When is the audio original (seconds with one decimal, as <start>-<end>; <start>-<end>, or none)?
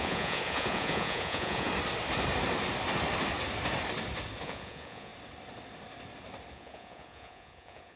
1.7-4.4; 5.1-6.5